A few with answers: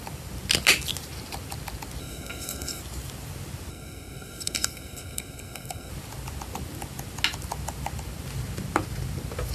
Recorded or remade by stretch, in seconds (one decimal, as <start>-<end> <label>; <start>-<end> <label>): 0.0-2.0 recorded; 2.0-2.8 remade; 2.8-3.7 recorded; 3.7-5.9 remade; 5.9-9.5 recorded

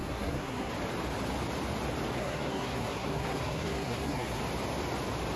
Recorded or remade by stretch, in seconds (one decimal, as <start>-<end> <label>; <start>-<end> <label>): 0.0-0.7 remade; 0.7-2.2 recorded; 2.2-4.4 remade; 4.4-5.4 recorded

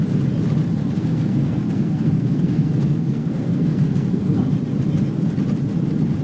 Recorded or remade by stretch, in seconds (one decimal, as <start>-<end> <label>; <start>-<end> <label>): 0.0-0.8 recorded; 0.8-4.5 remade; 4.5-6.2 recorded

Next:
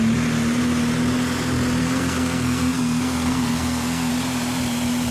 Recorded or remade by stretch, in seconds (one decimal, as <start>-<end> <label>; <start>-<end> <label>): 0.0-1.8 recorded; 1.8-4.1 remade; 4.1-5.1 recorded

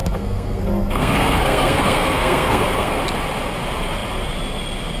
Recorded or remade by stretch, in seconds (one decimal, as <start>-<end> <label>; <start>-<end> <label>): 0.0-3.0 remade; 3.0-5.0 recorded